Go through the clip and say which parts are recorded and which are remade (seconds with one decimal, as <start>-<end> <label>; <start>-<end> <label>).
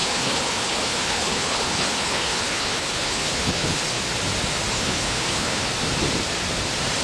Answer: 0.0-4.0 remade; 4.0-4.7 recorded; 4.7-5.7 remade; 5.7-7.0 recorded